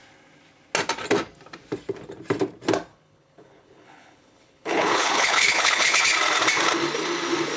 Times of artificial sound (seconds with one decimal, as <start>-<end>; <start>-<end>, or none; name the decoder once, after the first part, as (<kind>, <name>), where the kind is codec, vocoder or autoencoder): 2.9-6.0 (codec, HILCodec)